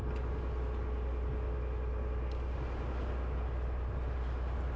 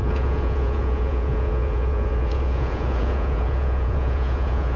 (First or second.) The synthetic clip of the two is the second